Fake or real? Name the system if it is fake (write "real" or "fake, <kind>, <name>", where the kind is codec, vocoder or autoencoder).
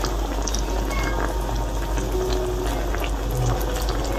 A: real